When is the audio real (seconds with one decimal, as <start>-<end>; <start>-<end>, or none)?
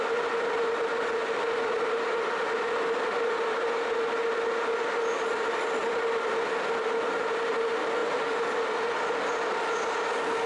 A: 0.0-5.8; 6.8-10.5